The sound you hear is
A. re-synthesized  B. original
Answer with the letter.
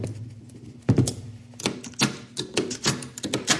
A